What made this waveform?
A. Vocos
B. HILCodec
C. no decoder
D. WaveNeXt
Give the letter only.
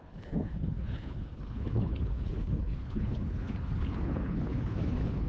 B